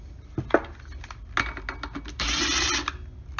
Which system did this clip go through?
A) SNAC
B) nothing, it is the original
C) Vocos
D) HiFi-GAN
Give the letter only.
B